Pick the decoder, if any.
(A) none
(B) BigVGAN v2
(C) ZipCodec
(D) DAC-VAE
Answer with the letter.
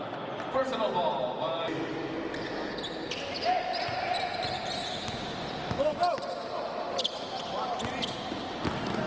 A